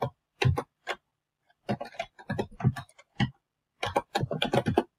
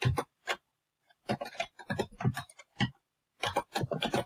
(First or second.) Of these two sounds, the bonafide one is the first